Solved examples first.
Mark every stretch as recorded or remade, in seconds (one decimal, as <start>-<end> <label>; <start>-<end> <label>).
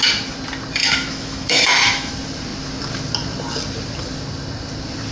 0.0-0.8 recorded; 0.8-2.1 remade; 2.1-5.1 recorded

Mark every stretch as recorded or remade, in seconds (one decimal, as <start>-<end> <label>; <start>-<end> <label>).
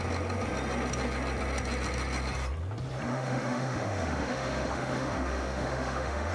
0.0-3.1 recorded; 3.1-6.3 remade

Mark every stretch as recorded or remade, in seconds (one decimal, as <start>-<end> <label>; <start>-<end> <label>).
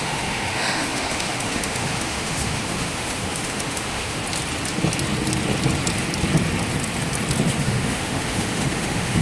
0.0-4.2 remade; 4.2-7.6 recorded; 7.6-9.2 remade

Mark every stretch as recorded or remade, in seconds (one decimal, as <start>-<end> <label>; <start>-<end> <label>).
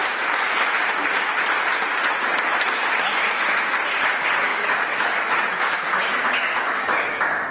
0.0-4.5 recorded; 4.5-7.5 remade